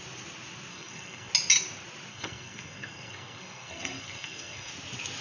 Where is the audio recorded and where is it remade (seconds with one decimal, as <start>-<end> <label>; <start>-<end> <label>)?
0.0-0.7 recorded; 0.7-1.3 remade; 1.3-2.1 recorded; 2.1-4.7 remade; 4.7-5.2 recorded